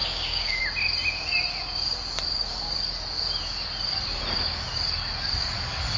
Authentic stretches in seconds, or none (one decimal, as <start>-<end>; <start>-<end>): 0.6-6.0